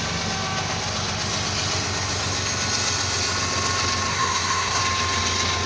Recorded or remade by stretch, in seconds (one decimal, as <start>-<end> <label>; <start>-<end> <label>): 0.0-4.1 recorded; 4.1-4.8 remade; 4.8-5.7 recorded